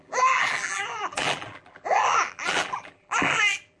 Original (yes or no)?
no